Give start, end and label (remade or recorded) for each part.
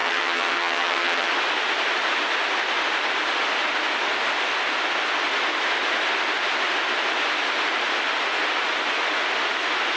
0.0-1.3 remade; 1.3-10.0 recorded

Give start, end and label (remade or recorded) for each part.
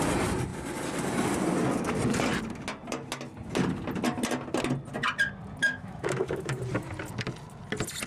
0.0-5.6 recorded; 5.6-6.6 remade; 6.6-8.1 recorded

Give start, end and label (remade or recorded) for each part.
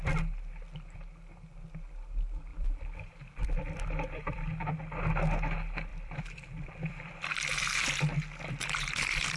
0.0-2.5 recorded; 2.5-4.8 remade; 4.8-5.9 recorded; 5.9-8.0 remade; 8.0-9.4 recorded